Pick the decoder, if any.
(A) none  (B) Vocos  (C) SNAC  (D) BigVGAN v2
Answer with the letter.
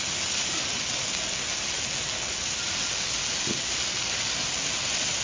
A